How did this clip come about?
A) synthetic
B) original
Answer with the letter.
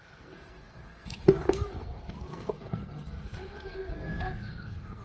A